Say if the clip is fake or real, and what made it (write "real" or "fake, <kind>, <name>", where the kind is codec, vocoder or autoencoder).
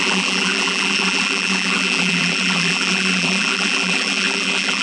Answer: fake, vocoder, BigVGAN v2